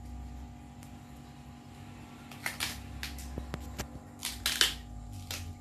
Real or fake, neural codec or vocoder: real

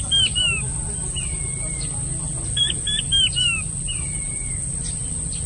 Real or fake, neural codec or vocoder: real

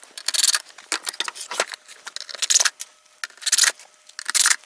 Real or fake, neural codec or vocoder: real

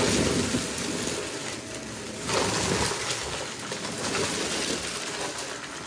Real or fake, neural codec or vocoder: real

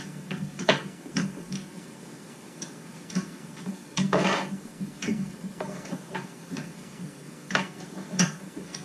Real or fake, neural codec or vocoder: fake, codec, SNAC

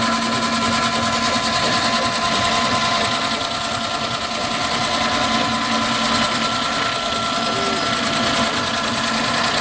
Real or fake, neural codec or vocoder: real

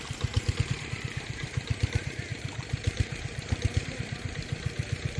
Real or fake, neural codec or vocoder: fake, vocoder, BigVGAN v2